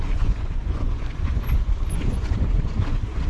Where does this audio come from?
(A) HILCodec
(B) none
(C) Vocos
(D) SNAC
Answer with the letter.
C